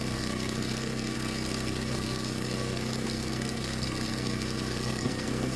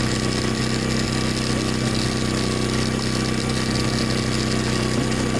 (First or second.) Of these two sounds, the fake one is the first